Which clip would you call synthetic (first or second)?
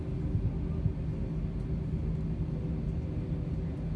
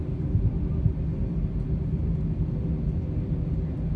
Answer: second